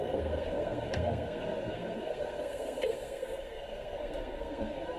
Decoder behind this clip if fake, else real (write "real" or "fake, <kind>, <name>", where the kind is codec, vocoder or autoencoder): fake, codec, SNAC